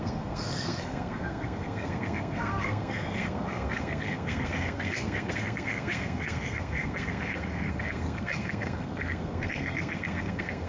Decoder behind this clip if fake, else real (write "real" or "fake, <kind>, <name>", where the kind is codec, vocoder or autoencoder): fake, codec, SNAC